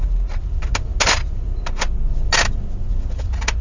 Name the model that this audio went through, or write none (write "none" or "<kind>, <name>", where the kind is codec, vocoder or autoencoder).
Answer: none